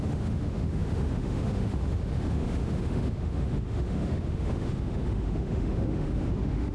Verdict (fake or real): fake